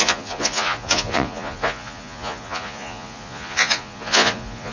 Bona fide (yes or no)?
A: no